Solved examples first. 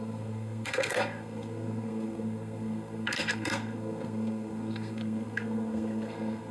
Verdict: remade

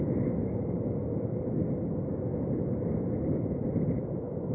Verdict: recorded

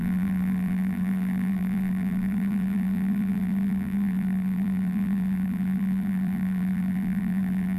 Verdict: remade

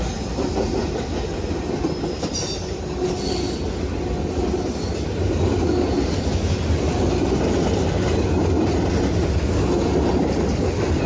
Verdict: recorded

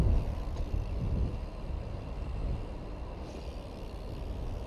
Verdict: recorded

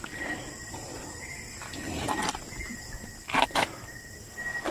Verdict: recorded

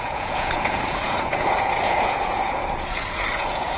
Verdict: remade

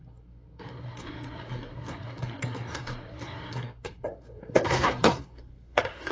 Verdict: remade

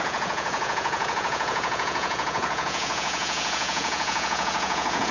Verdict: remade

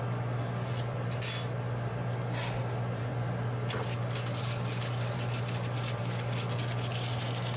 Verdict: recorded